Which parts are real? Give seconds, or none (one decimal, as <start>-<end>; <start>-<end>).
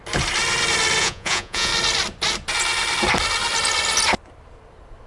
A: 0.0-1.0; 1.7-5.1